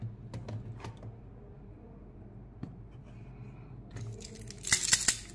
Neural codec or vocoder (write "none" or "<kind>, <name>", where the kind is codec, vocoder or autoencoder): none